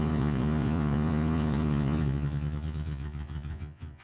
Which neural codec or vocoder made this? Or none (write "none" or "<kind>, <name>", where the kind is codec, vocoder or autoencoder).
vocoder, Vocos